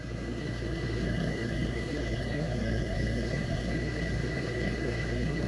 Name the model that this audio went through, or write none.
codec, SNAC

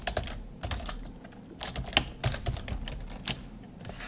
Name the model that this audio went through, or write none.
none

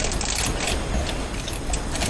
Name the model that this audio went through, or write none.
none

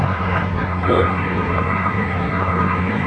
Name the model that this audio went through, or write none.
codec, SNAC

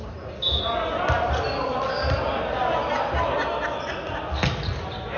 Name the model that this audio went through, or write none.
none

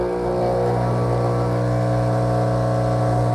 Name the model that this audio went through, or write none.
none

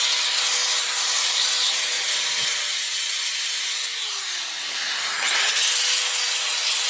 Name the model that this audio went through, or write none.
none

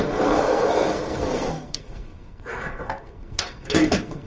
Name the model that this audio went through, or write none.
codec, SNAC